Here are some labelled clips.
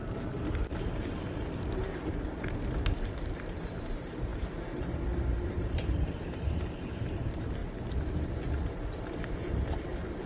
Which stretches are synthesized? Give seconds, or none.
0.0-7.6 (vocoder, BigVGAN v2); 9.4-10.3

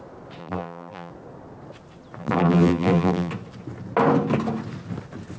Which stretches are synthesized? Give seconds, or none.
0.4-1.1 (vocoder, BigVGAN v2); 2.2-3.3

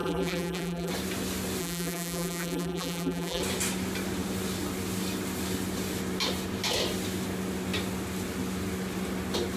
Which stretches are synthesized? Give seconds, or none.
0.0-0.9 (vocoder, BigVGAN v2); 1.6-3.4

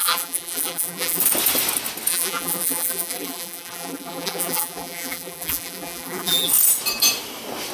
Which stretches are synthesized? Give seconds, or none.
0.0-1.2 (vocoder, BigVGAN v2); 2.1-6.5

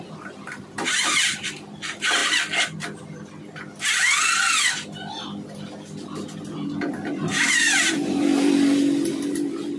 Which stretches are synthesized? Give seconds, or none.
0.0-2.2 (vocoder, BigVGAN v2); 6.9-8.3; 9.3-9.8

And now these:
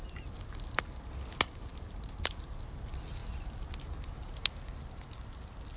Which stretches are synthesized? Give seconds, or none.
1.7-2.5 (vocoder, BigVGAN v2)

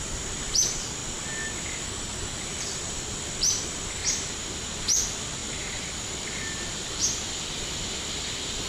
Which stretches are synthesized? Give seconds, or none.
0.0-1.0 (vocoder, BigVGAN v2); 2.1-4.0; 4.8-5.4; 6.3-8.7